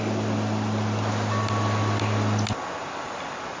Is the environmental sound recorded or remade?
recorded